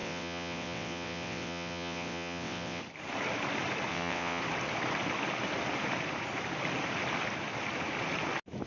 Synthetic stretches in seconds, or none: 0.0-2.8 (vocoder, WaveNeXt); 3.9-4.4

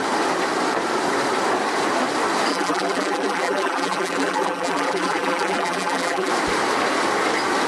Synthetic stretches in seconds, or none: 2.5-6.3 (vocoder, BigVGAN v2)

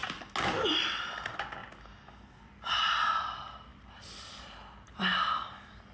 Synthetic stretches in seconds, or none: none

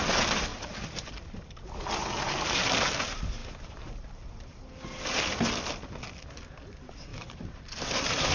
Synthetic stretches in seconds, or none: 0.5-1.1 (vocoder, BigVGAN v2); 3.4-4.7; 7.1-8.3

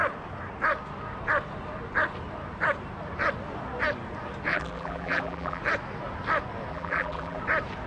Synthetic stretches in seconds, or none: 4.5-5.6 (vocoder, BigVGAN v2); 6.7-7.4